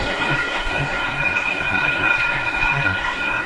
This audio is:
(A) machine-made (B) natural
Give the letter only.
A